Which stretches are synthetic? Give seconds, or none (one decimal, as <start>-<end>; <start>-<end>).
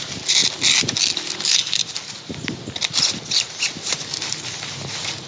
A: none